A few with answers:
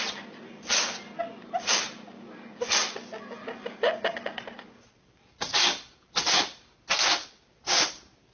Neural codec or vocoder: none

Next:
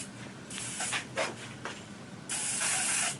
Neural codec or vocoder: none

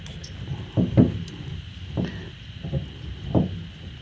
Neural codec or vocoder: none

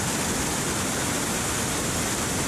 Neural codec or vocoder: none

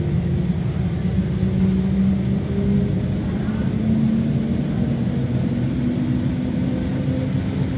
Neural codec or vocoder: none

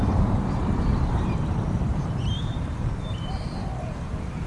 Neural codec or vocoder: vocoder, BigVGAN v2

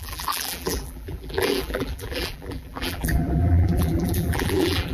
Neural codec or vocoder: vocoder, BigVGAN v2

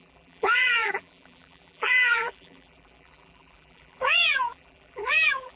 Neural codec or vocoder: vocoder, BigVGAN v2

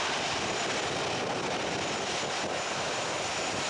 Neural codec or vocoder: none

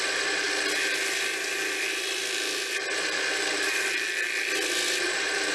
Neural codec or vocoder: none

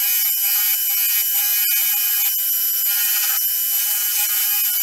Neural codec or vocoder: none